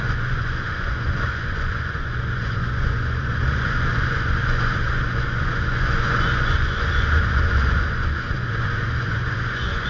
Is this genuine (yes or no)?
no